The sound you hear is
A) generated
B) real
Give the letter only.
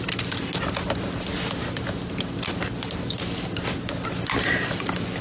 B